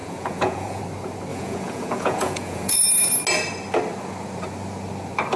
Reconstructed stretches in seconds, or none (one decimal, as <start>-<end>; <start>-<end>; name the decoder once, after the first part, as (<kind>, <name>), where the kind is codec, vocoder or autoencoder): 0.0-0.8 (vocoder, Vocos); 1.3-2.8

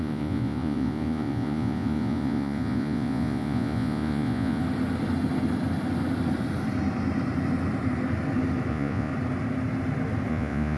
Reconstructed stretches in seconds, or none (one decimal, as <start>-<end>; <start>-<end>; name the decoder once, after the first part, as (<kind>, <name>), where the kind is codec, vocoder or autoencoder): 0.0-4.6 (vocoder, Vocos); 8.7-9.1; 10.3-10.8

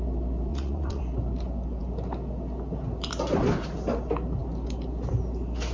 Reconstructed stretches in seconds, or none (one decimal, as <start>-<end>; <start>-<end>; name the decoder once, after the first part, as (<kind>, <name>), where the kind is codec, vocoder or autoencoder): 0.5-1.0 (vocoder, Vocos)

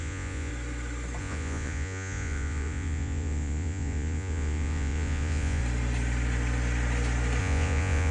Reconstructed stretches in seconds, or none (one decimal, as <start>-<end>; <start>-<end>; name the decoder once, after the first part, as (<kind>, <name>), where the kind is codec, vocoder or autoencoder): 0.0-0.5 (vocoder, Vocos); 1.2-5.6; 7.4-8.1

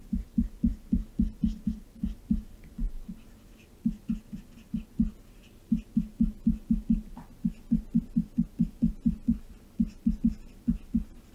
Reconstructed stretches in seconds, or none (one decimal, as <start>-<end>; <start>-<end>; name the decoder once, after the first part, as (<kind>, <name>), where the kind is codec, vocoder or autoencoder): none